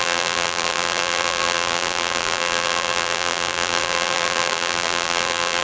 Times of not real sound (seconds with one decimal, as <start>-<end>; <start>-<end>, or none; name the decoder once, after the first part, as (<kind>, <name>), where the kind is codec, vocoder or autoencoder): 0.0-5.6 (vocoder, BigVGAN v2)